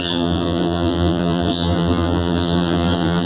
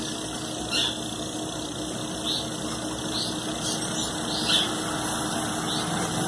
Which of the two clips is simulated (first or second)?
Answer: first